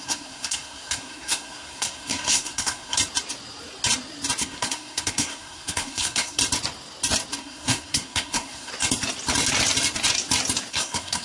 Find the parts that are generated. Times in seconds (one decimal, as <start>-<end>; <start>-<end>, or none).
0.0-3.0; 4.4-6.4; 7.4-8.7; 10.7-11.2